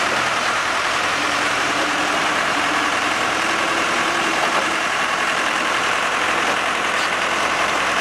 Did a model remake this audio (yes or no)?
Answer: yes